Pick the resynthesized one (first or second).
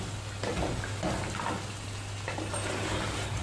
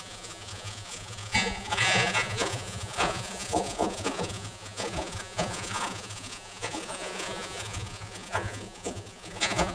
second